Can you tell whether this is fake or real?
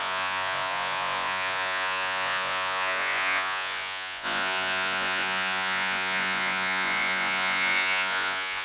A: fake